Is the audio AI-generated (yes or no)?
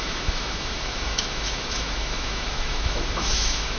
yes